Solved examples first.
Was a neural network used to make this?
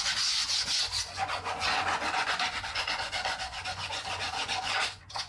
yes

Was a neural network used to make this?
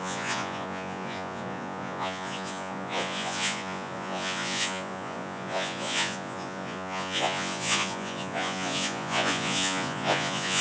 yes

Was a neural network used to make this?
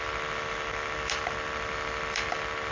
no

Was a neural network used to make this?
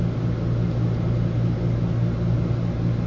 no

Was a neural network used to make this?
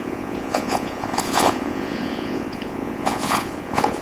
yes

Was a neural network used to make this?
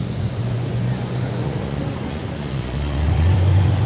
yes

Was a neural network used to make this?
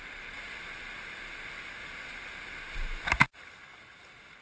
no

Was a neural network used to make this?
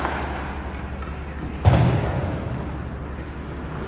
no